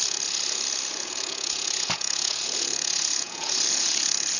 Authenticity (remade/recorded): remade